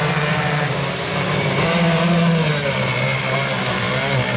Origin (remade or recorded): recorded